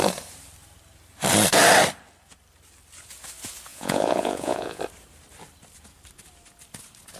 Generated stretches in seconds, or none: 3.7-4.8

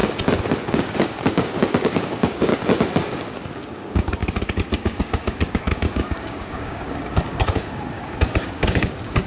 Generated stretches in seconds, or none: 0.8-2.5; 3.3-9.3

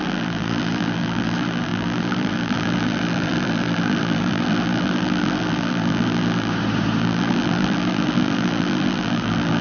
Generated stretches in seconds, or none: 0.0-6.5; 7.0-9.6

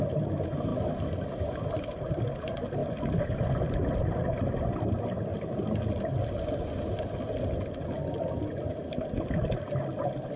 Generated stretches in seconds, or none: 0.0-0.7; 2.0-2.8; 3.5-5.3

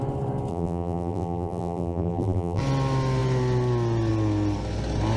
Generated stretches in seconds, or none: 0.5-2.6

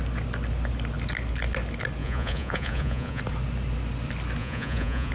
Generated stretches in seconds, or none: 2.0-3.2; 4.4-5.1